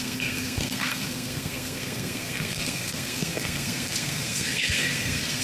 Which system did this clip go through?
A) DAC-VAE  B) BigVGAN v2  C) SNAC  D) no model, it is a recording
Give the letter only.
C